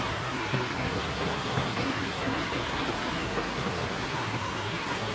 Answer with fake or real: fake